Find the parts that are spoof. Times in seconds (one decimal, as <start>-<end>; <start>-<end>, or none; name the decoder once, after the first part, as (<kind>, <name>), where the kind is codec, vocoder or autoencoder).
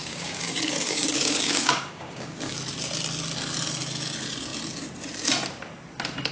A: 0.0-2.6 (codec, DAC)